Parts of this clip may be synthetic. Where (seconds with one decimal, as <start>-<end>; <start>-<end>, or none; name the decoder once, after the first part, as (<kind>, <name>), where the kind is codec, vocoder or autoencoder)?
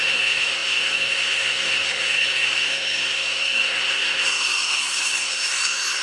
0.0-6.0 (codec, SNAC)